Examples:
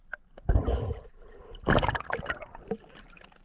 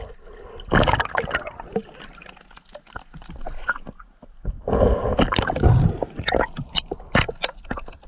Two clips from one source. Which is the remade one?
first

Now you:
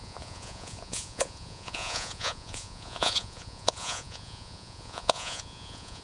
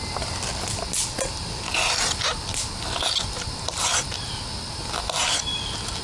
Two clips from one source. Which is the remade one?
first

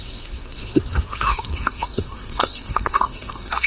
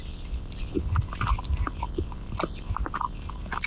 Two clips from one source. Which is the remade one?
first